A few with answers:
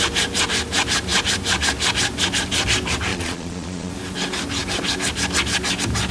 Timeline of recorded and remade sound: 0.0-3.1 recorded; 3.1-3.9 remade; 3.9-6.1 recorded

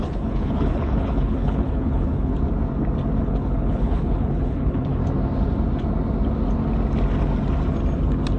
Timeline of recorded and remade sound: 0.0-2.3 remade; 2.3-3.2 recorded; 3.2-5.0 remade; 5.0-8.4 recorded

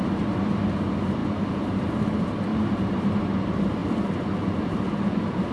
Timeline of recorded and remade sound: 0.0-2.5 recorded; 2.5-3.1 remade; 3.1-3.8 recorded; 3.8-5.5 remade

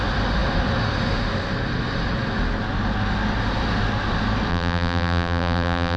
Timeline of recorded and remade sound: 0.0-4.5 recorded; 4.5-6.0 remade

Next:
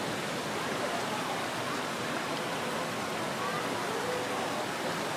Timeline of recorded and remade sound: 0.0-2.5 remade; 2.5-5.2 recorded

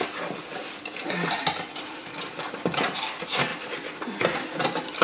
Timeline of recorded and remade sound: 0.0-5.0 recorded

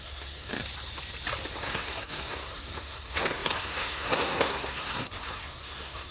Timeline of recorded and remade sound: 0.0-0.5 remade; 0.5-1.6 recorded; 1.6-6.1 remade

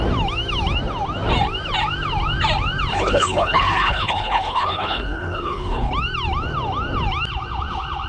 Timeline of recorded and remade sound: 0.0-2.9 recorded; 2.9-5.9 remade; 5.9-8.1 recorded